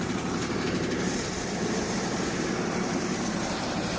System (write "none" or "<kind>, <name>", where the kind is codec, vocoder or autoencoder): vocoder, BigVGAN v2